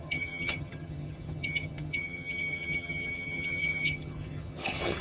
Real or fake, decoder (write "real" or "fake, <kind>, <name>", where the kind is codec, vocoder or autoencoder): fake, vocoder, HiFi-GAN